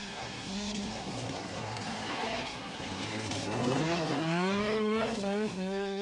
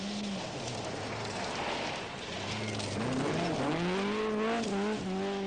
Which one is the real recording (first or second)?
second